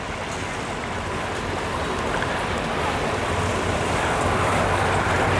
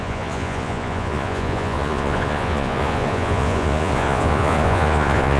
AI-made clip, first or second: second